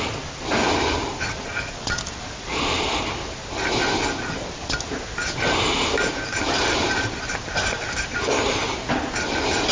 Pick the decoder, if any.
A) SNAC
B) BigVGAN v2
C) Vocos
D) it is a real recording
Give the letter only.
D